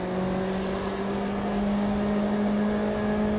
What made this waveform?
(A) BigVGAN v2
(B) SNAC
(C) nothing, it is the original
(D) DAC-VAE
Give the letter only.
C